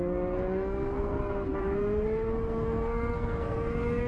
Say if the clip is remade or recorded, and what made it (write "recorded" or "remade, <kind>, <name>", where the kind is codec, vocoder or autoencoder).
remade, codec, SNAC